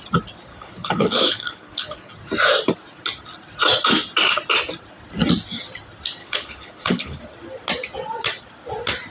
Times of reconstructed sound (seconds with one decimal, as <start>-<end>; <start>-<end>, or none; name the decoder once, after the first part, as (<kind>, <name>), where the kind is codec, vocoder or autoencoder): 0.5-2.1 (codec, HILCodec); 6.2-7.2